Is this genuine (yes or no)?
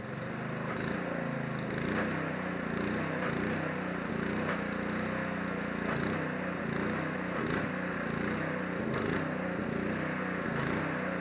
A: yes